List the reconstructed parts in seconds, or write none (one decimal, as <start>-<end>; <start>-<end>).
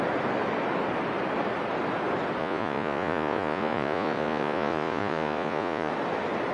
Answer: 2.4-5.9